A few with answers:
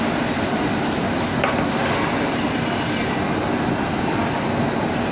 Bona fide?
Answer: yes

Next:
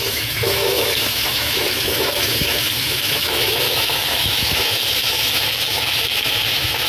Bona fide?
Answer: no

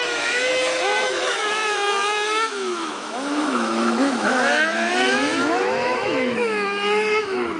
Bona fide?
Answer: no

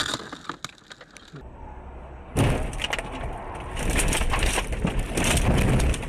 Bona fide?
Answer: yes